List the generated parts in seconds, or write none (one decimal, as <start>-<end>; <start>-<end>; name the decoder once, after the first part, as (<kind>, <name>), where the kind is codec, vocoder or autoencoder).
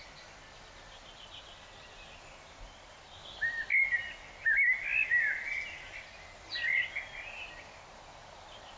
none